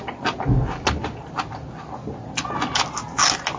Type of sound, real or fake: real